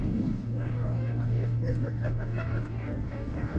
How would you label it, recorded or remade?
remade